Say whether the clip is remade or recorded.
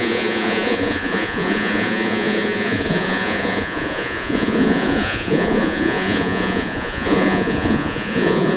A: remade